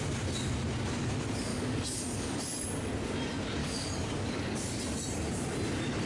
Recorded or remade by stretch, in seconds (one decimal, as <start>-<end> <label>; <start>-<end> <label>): 0.0-1.5 recorded; 1.5-2.4 remade; 2.4-3.6 recorded; 3.6-4.8 remade; 4.8-6.1 recorded